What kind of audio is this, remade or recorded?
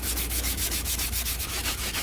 remade